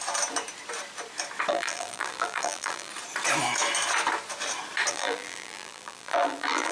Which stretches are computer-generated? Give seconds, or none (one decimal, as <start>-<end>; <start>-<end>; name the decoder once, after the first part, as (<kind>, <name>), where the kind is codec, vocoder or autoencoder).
1.5-2.9 (vocoder, BigVGAN v2); 4.9-6.7